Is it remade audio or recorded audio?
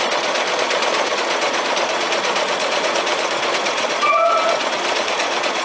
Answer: remade